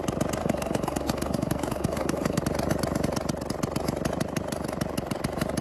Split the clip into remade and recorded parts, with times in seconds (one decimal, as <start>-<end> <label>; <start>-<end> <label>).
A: 0.0-0.4 recorded; 0.4-2.4 remade; 2.4-5.6 recorded

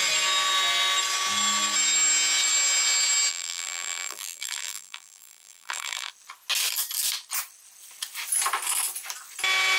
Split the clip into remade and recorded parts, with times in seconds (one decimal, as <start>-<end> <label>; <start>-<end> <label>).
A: 0.0-3.3 recorded; 3.3-6.1 remade; 6.1-9.8 recorded

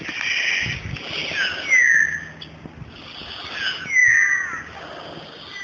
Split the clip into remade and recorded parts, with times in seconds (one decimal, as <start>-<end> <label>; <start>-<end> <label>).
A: 0.0-5.6 recorded

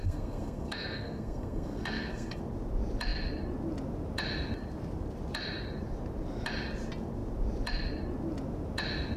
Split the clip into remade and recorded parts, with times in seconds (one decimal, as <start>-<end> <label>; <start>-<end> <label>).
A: 0.0-2.4 remade; 2.4-9.2 recorded

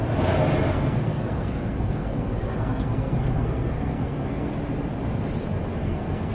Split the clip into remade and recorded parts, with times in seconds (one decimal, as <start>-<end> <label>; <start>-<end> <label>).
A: 0.0-0.7 recorded; 0.7-4.5 remade; 4.5-5.8 recorded; 5.8-6.3 remade

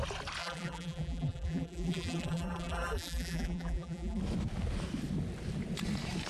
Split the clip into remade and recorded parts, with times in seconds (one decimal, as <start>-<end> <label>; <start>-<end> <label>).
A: 0.0-0.4 recorded; 0.4-4.2 remade; 4.2-6.3 recorded

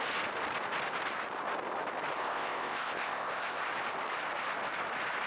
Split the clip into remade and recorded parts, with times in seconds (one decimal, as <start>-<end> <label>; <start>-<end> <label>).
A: 0.0-2.2 recorded; 2.2-3.6 remade; 3.6-5.3 recorded